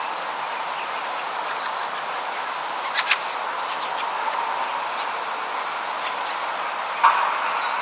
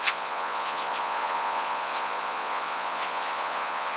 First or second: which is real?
first